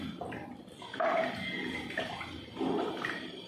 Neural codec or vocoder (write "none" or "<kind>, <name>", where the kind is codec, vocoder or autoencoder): vocoder, BigVGAN v2